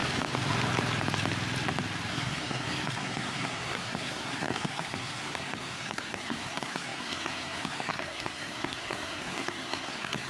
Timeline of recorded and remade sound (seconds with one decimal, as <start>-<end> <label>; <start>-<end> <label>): 0.0-2.1 recorded; 2.1-10.3 remade